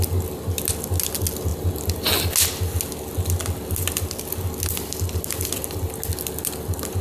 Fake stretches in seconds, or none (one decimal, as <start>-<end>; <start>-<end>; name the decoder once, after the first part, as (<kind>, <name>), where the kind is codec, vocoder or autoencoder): none

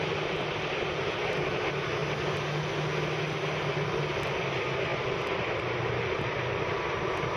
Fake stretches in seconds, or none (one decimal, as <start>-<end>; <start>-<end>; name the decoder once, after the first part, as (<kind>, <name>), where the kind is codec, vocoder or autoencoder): none

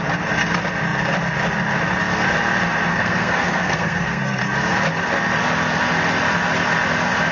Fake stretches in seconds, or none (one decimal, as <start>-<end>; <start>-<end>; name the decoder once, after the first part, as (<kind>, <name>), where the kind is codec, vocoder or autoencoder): 2.9-4.4 (codec, SNAC)